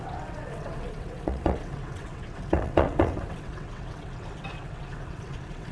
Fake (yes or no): yes